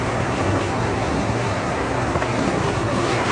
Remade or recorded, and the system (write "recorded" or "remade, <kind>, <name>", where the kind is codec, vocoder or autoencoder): remade, codec, SNAC